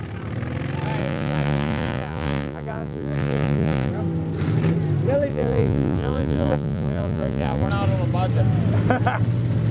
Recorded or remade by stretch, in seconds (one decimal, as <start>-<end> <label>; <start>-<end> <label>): 0.0-1.0 recorded; 1.0-3.9 remade; 3.9-5.3 recorded; 5.3-7.7 remade; 7.7-9.7 recorded